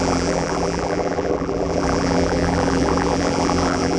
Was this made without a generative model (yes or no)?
no